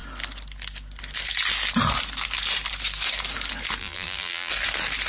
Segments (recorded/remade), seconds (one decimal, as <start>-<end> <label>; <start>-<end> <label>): 0.0-3.8 recorded; 3.8-4.5 remade; 4.5-5.1 recorded